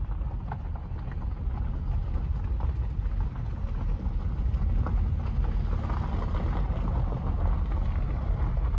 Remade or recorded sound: recorded